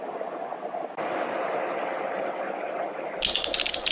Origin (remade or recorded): recorded